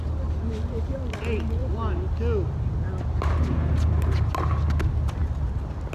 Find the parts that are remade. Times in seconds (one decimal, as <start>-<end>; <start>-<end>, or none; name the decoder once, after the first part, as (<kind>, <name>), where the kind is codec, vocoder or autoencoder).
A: none